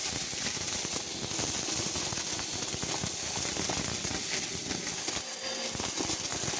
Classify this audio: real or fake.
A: real